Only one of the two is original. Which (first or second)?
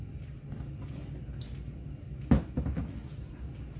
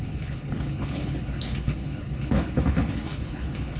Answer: first